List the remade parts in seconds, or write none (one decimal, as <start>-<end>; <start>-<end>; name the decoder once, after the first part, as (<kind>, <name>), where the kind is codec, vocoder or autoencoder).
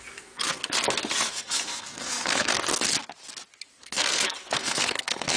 0.0-0.6 (codec, SNAC); 1.3-2.5; 3.7-5.4